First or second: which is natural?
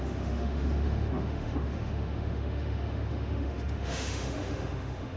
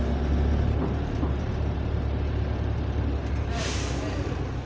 second